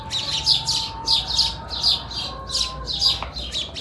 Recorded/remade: recorded